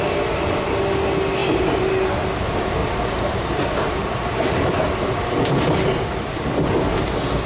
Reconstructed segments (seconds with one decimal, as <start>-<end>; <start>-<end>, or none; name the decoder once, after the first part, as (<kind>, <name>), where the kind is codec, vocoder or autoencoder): 1.4-1.9 (vocoder, BigVGAN v2); 2.8-4.3